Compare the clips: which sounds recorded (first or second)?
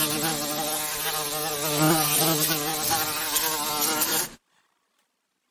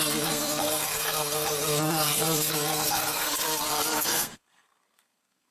first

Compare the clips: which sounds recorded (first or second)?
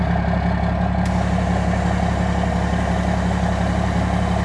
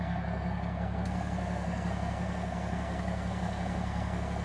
first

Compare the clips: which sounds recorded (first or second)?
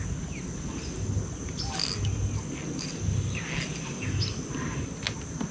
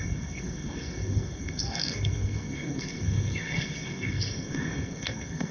first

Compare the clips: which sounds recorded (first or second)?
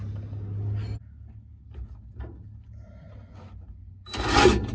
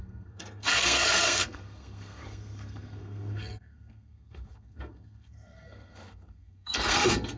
first